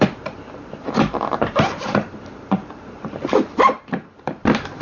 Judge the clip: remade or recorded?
remade